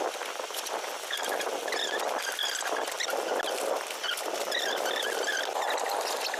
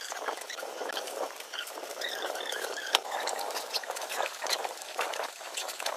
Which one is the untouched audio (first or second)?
first